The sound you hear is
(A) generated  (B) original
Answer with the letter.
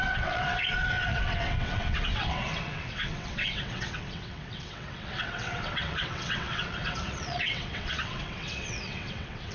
A